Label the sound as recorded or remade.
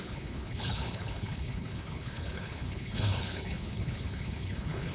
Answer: remade